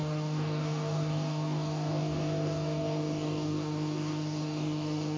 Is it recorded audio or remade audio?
remade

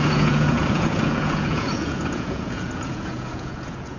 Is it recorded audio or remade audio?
remade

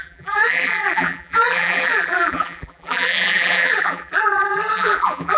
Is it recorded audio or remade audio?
remade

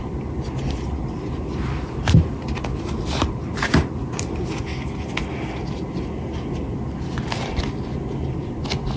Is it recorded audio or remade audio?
recorded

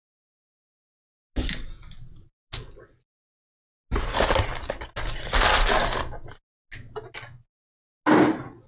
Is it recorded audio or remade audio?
recorded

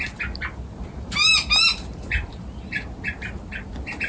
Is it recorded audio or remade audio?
recorded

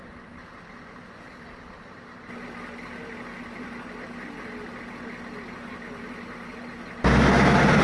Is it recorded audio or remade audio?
recorded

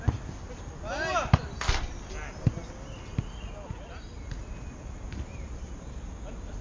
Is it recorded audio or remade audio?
recorded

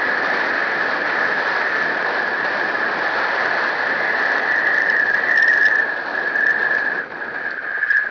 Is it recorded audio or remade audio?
recorded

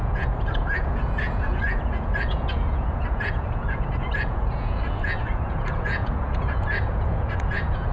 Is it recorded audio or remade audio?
remade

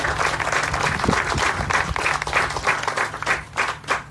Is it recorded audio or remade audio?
recorded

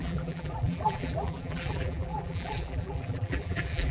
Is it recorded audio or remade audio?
remade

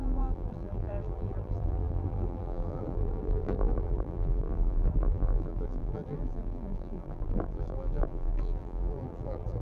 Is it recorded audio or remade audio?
remade